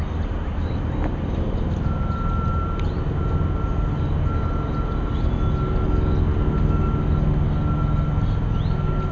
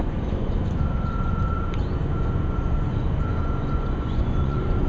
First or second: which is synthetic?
second